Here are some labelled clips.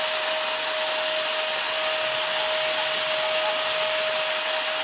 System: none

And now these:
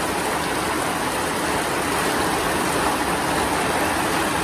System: none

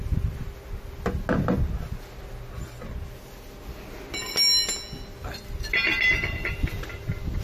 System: none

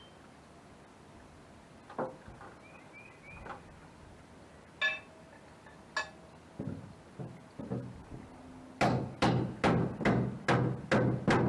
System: none